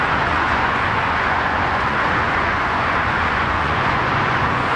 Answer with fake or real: fake